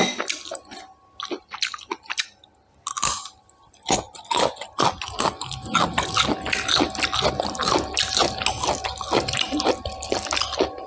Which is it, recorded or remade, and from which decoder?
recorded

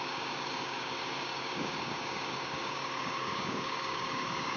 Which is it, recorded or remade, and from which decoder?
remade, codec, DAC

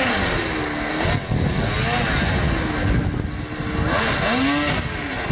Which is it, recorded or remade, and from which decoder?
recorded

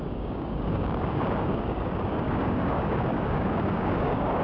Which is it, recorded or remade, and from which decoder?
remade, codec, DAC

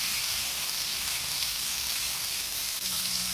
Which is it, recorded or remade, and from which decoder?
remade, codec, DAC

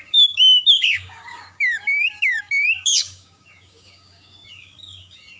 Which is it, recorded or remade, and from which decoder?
remade, codec, DAC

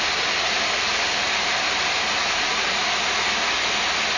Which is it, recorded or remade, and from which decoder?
recorded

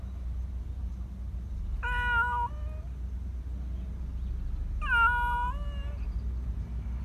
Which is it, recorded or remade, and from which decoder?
recorded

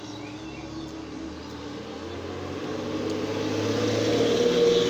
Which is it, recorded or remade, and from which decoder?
recorded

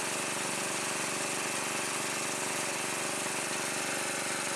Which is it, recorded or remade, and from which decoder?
recorded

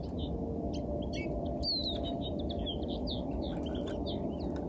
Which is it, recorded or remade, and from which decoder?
recorded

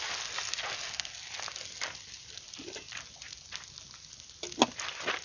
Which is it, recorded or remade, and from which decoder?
recorded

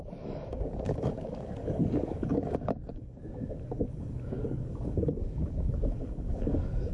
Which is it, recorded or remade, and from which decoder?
remade, codec, DAC